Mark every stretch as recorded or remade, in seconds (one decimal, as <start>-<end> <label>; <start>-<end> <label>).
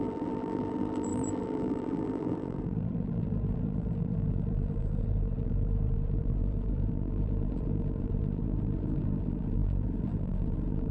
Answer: 0.0-10.9 remade